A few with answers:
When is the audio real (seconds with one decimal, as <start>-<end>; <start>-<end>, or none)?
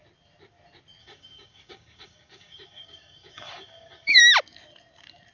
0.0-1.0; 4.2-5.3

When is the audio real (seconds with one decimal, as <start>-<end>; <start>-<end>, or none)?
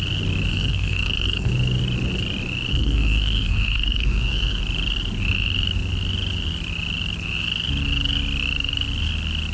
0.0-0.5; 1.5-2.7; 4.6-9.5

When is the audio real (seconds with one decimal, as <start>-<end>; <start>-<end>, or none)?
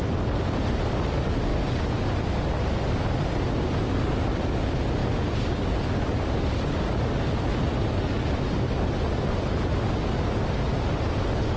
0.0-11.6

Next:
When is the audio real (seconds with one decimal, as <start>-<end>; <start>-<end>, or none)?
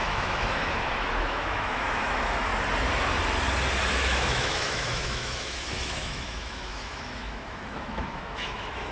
2.5-3.9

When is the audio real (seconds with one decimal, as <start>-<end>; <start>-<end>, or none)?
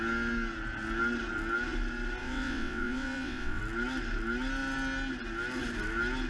0.0-2.2; 3.6-6.3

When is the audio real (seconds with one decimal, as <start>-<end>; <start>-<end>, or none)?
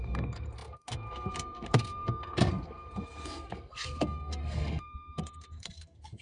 none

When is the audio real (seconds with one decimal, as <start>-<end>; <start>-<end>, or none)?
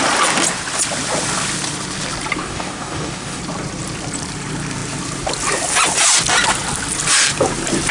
0.0-2.4; 3.4-7.9